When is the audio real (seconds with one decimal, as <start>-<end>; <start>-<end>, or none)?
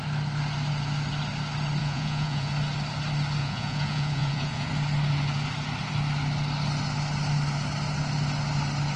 0.0-1.8; 2.5-3.4; 4.7-9.0